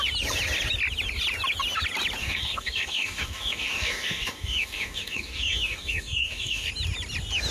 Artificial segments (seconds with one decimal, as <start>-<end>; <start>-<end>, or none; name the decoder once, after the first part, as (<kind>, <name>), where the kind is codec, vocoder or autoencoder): 2.2-6.7 (codec, DAC)